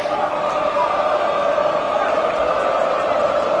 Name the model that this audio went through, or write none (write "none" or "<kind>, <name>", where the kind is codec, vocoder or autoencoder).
vocoder, BigVGAN v2